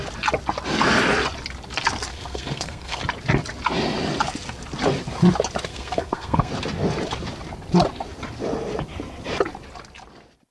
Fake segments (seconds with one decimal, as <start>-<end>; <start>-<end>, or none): 2.1-3.0; 5.7-6.5